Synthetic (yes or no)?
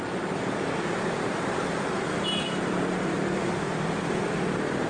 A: yes